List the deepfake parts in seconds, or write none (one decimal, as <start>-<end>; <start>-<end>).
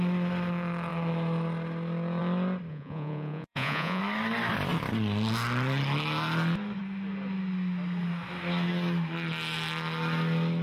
2.7-4.0